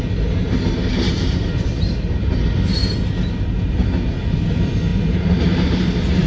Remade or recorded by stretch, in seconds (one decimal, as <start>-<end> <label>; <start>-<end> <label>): 0.0-0.9 recorded; 0.9-2.4 remade; 2.4-2.8 recorded; 2.8-3.7 remade; 3.7-4.9 recorded; 4.9-5.4 remade; 5.4-6.3 recorded